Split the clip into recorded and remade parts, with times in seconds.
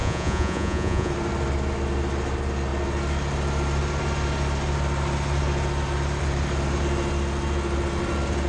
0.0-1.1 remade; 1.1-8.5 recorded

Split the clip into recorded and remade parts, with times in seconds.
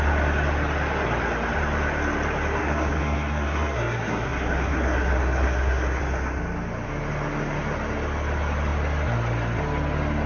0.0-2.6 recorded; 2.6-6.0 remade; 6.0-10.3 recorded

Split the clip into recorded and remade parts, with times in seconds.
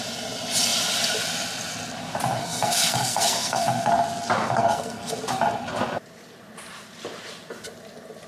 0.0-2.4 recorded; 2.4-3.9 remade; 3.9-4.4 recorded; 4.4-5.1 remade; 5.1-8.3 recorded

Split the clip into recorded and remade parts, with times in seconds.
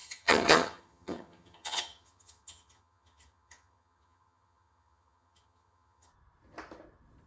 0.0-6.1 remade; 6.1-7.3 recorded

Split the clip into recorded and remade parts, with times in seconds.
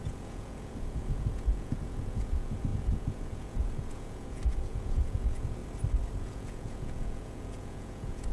0.0-5.6 remade; 5.6-6.2 recorded; 6.2-8.3 remade